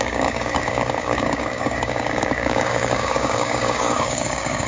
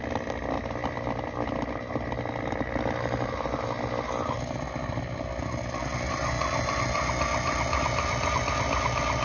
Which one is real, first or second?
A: second